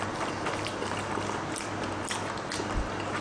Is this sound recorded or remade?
recorded